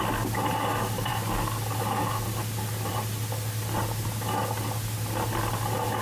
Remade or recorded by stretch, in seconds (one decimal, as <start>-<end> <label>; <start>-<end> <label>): 0.0-6.0 recorded